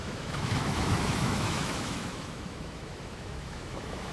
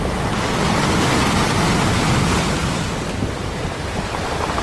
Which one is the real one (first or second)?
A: second